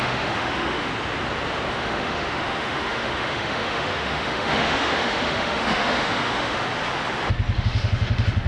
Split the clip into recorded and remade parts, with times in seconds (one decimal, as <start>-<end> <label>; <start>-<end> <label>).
0.0-0.9 remade; 0.9-1.7 recorded; 1.7-6.7 remade; 6.7-7.6 recorded; 7.6-8.5 remade